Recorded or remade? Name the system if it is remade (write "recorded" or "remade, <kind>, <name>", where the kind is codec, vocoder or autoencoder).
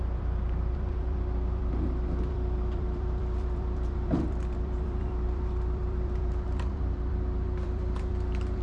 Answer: remade, vocoder, BigVGAN v2